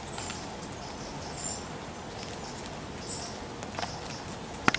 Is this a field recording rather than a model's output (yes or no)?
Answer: yes